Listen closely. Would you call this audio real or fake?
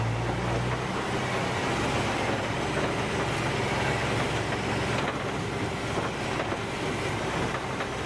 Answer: real